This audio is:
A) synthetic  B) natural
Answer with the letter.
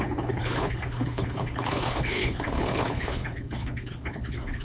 A